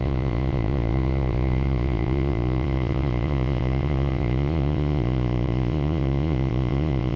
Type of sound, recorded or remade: remade